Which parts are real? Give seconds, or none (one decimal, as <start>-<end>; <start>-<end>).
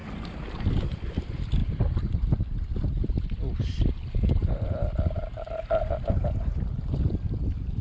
0.0-0.9